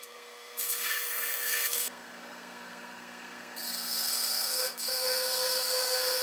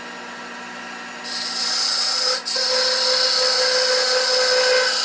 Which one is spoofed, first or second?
first